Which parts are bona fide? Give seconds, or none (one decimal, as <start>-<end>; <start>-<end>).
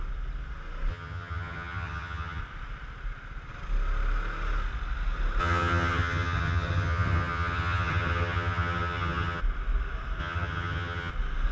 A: 0.0-0.9; 2.4-5.4; 9.4-10.2; 11.1-11.5